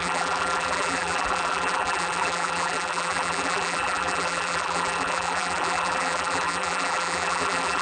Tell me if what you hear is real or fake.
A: fake